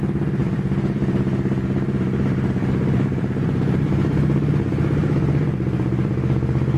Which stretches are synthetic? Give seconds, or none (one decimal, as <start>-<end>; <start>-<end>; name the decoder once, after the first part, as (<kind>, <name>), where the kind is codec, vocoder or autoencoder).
0.4-4.5 (vocoder, BigVGAN v2); 5.0-6.1